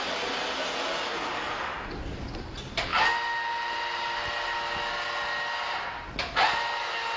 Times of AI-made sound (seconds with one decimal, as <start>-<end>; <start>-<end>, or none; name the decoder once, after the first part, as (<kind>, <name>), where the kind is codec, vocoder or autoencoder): none